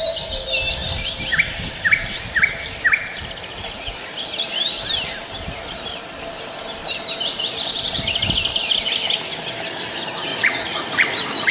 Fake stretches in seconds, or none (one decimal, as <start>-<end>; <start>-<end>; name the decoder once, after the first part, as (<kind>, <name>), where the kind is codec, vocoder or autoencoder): 3.5-4.1 (vocoder, Vocos); 10.3-11.5